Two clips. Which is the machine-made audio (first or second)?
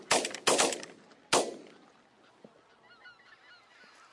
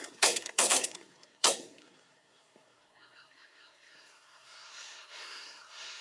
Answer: second